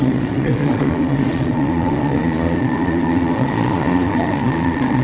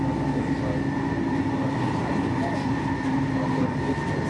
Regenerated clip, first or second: first